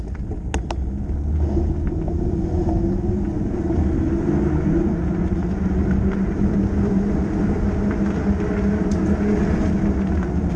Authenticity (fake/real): real